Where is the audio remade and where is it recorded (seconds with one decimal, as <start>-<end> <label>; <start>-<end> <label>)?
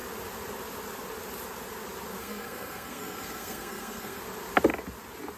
0.0-2.2 recorded; 2.2-4.2 remade; 4.2-5.4 recorded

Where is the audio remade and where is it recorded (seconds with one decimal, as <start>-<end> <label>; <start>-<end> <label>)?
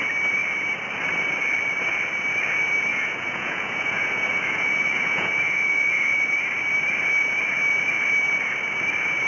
0.0-2.9 recorded; 2.9-6.3 remade; 6.3-9.3 recorded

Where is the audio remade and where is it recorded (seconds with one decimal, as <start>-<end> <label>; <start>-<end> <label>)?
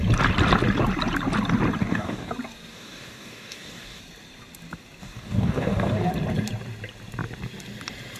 0.0-1.8 recorded; 1.8-2.3 remade; 2.3-2.7 recorded; 2.7-4.0 remade; 4.0-5.0 recorded; 5.0-6.1 remade; 6.1-8.2 recorded